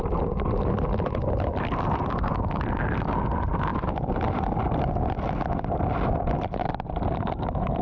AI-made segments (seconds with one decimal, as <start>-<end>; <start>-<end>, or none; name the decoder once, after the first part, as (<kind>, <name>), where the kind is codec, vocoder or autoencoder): none